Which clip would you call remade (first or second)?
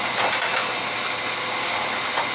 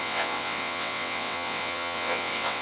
second